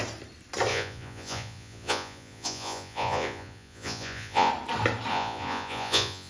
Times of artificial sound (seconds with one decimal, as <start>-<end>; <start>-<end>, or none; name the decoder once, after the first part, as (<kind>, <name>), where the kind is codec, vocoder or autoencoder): 0.7-4.5 (vocoder, Vocos); 5.1-6.3